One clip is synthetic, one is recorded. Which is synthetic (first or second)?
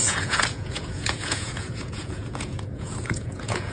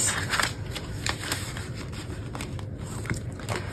first